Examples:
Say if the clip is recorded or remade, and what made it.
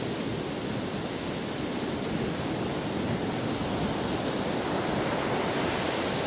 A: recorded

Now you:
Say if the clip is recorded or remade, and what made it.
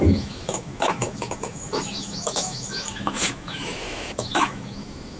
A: remade, autoencoder, DAC-VAE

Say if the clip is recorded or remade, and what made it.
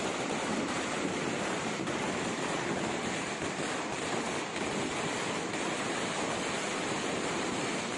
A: remade, vocoder, BigVGAN v2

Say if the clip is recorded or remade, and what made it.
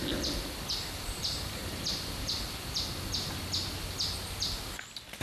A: recorded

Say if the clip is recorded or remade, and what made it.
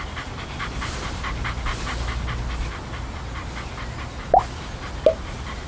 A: recorded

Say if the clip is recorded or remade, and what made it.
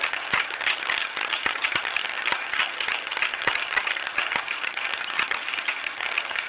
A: remade, vocoder, HiFi-GAN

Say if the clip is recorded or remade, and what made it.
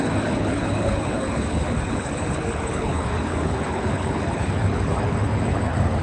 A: remade, codec, HILCodec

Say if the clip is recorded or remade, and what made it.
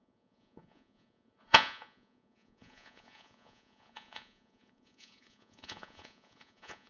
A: remade, vocoder, Vocos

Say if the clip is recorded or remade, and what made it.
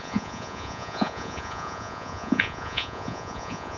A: remade, vocoder, Vocos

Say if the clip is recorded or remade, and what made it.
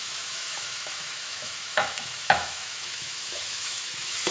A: remade, autoencoder, DAC-VAE